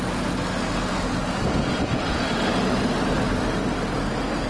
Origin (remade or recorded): recorded